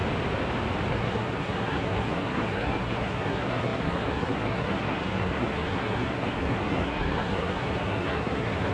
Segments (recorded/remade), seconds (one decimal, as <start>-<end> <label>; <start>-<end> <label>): 0.0-0.9 recorded; 0.9-8.7 remade